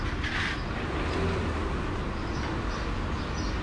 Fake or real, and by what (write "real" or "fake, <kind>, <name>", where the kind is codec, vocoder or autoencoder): real